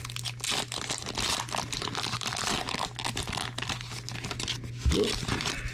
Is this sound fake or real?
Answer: real